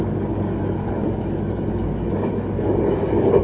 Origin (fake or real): fake